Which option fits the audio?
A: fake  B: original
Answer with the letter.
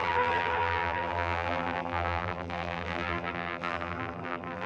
A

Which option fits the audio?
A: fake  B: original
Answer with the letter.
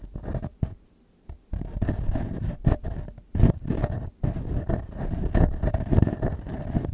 B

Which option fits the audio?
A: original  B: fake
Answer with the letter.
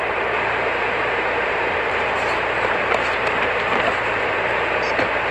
B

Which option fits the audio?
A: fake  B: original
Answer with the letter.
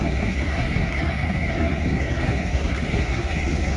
A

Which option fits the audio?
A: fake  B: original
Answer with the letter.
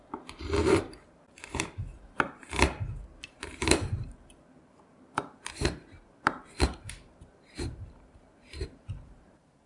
A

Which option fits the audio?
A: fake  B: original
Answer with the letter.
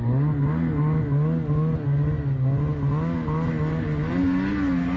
B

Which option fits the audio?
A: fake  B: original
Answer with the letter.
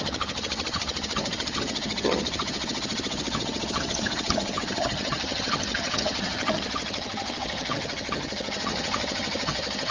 A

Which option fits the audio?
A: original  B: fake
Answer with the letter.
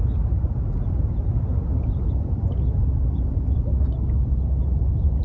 A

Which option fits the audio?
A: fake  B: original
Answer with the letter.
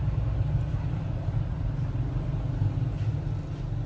B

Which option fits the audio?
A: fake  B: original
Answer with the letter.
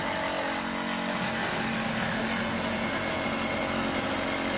B